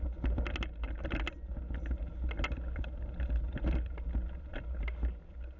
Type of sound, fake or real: real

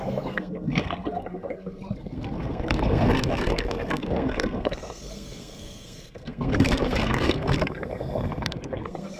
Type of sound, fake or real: fake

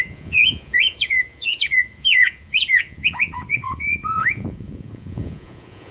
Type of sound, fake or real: fake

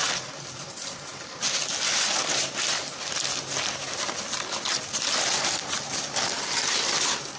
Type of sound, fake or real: real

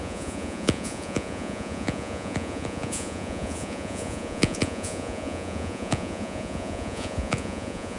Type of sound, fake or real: fake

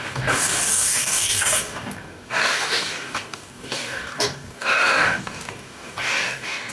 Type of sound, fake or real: fake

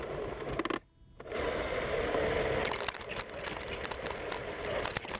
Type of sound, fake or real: real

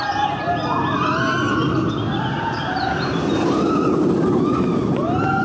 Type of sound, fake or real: real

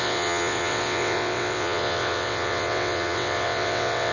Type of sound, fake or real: fake